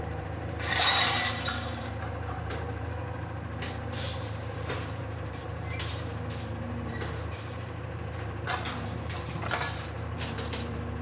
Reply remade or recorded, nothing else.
remade